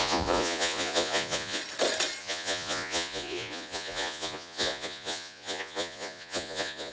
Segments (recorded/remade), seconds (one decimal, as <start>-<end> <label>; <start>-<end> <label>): 0.0-1.6 remade; 1.6-2.2 recorded; 2.2-6.9 remade